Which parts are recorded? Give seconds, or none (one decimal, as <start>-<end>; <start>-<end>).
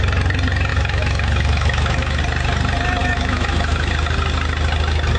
0.0-0.7; 2.2-3.0; 3.9-5.2